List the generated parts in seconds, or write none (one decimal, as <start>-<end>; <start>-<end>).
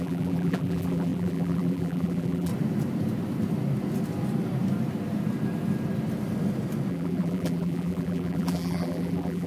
0.0-2.5; 6.9-9.5